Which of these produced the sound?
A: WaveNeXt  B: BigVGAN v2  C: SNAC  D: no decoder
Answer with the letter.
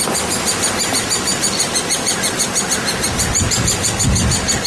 D